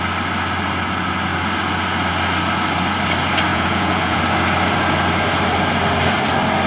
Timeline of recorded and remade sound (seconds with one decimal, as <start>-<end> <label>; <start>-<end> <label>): 0.0-3.5 recorded; 3.5-4.2 remade; 4.2-6.7 recorded